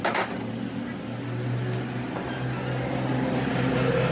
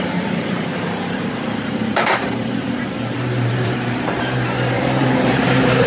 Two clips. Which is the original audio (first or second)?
first